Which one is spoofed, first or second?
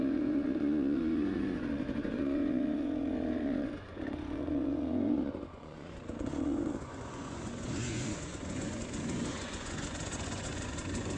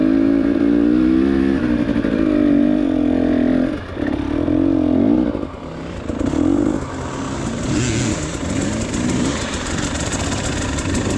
first